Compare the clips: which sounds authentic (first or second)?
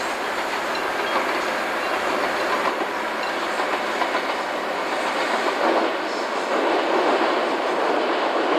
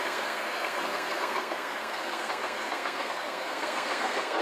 first